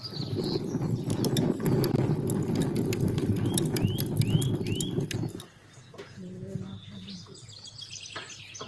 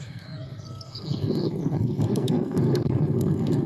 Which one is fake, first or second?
second